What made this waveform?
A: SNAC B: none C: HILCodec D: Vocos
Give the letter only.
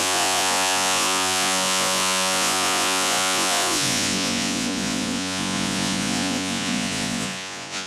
D